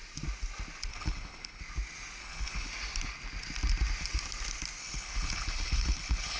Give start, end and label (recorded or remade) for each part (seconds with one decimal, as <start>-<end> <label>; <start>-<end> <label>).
0.0-0.9 recorded; 0.9-1.6 remade; 1.6-2.2 recorded; 2.2-2.7 remade; 2.7-4.8 recorded; 4.8-6.4 remade